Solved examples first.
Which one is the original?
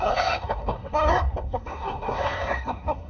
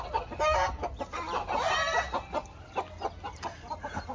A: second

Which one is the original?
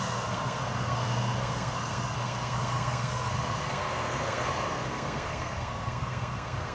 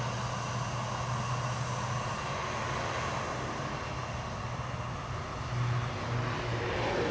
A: second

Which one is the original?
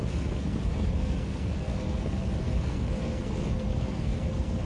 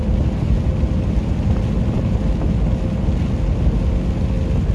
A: second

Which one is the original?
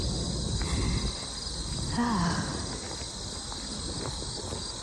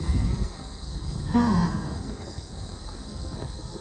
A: first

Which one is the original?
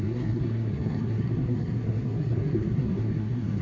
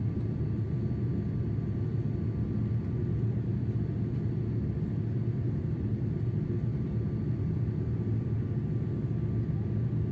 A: second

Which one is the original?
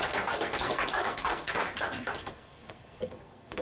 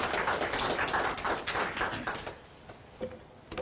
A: second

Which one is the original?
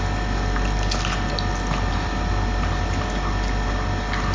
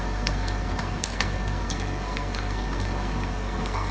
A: first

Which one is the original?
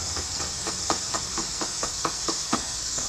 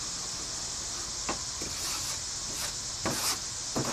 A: second